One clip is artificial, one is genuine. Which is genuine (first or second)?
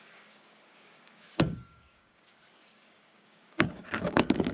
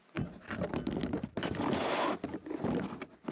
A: second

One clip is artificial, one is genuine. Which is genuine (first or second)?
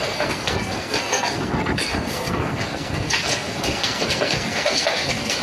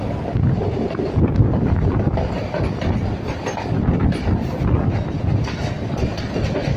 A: second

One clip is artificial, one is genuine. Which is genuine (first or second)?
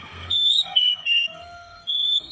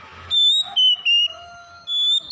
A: second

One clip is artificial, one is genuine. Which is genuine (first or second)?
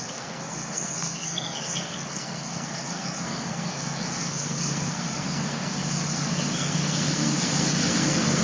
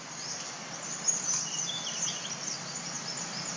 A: second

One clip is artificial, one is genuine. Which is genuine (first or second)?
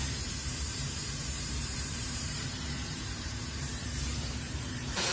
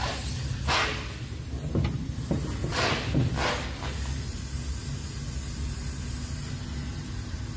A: second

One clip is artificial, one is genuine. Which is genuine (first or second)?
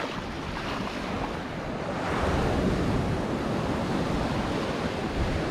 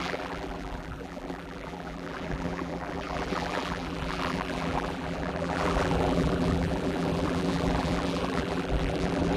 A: first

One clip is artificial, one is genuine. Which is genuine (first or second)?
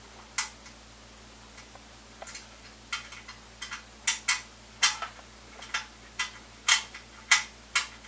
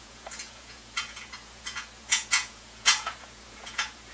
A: first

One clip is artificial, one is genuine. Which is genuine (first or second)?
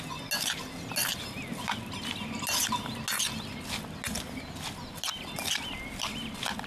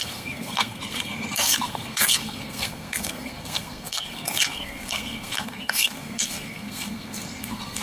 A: first